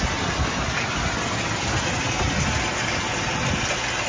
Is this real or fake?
real